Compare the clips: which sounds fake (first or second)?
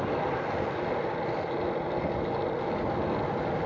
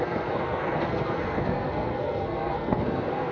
second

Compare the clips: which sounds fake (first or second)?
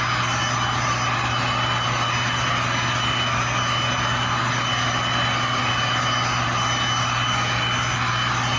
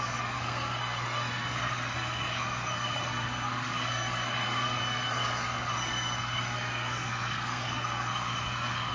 second